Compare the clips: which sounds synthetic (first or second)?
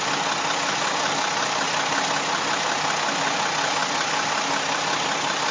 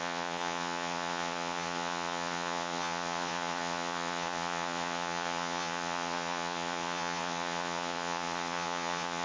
second